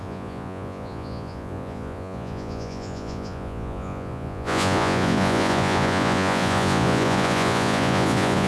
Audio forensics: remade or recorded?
remade